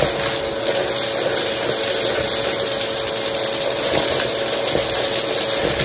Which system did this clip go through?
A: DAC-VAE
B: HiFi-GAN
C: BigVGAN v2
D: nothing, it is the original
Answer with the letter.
D